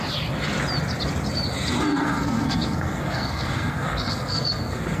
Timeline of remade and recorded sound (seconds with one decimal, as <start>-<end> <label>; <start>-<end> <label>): 0.0-1.9 recorded; 1.9-5.0 remade